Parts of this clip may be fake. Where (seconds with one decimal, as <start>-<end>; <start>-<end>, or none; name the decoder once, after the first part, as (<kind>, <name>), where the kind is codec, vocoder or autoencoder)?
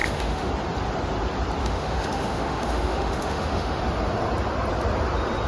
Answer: 0.0-0.5 (autoencoder, DAC-VAE); 1.6-3.8